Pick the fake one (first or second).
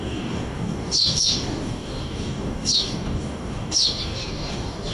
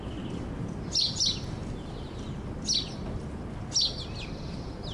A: first